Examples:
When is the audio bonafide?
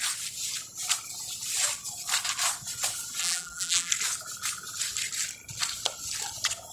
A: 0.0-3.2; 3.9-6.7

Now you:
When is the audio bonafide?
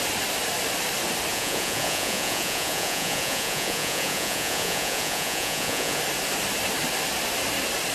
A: 0.0-1.3; 6.0-7.9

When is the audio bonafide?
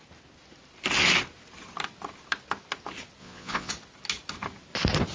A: 0.0-3.2; 3.7-5.1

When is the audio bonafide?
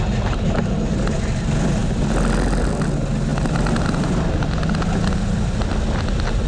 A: 0.0-6.5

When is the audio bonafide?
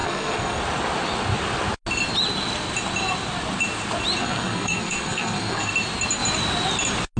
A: 0.6-4.2; 5.7-7.2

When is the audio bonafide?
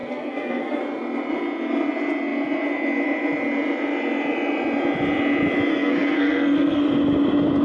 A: 0.8-5.7; 6.8-7.6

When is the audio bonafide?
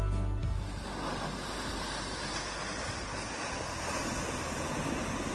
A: 0.0-5.3